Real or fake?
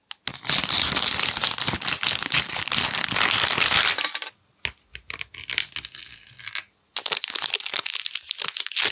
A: real